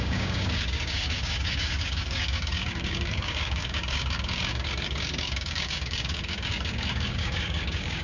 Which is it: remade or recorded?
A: remade